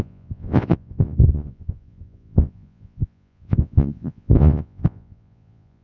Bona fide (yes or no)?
no